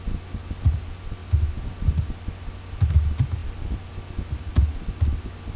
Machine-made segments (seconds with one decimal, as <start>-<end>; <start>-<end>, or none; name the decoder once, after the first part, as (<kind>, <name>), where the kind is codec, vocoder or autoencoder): none